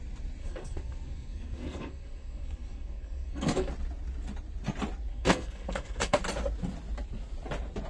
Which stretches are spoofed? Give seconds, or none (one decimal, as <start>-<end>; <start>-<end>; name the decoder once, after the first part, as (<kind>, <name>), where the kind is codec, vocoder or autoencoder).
0.4-3.7 (codec, SNAC); 5.1-6.2